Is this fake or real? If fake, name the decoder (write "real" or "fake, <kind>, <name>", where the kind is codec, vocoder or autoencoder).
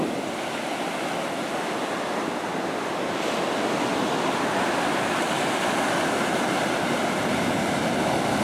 real